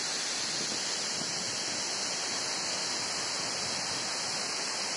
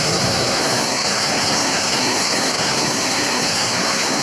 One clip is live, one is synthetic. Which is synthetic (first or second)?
second